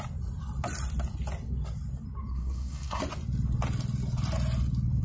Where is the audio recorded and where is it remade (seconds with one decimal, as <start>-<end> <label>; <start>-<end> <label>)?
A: 0.0-2.3 recorded; 2.3-3.0 remade; 3.0-5.0 recorded